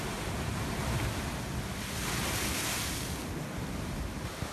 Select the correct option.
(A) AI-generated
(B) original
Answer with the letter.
B